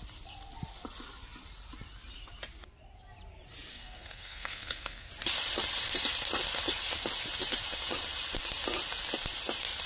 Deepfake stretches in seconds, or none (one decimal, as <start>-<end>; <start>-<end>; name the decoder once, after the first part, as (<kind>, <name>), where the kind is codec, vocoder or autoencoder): 3.7-5.1 (codec, SNAC)